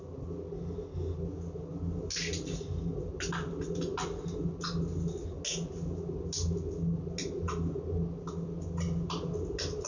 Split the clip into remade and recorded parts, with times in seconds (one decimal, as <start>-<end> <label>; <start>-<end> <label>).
0.0-9.9 recorded